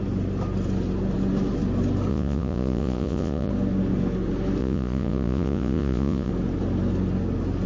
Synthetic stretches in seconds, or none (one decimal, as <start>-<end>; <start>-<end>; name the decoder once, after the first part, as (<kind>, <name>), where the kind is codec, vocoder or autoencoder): 2.1-3.5 (vocoder, Vocos); 4.6-6.3